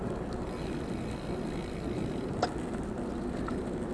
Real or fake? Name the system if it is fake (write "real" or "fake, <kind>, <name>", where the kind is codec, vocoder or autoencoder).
real